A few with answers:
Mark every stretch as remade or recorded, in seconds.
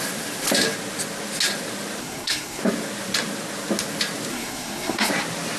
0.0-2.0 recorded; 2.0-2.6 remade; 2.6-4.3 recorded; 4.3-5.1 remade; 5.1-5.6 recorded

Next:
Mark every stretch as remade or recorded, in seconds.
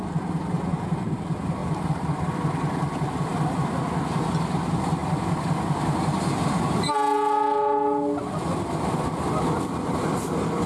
0.0-1.6 recorded; 1.6-2.3 remade; 2.3-10.7 recorded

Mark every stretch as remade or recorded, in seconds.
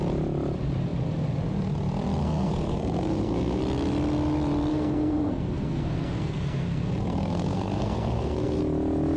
0.0-2.2 recorded; 2.2-3.6 remade; 3.6-4.7 recorded; 4.7-8.6 remade; 8.6-9.2 recorded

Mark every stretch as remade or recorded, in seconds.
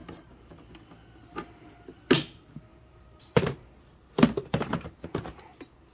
0.0-0.6 remade; 0.6-2.7 recorded; 2.7-5.0 remade; 5.0-5.9 recorded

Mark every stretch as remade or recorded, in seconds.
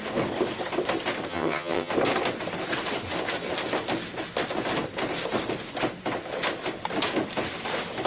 0.0-1.3 recorded; 1.3-1.9 remade; 1.9-8.1 recorded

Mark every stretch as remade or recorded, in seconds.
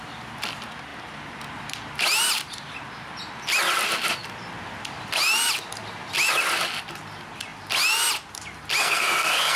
0.0-8.8 recorded; 8.8-9.6 remade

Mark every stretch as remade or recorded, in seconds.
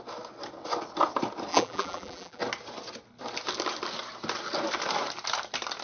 0.0-1.5 recorded; 1.5-2.4 remade; 2.4-5.8 recorded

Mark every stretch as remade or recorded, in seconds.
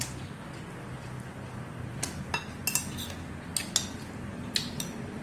0.0-5.2 recorded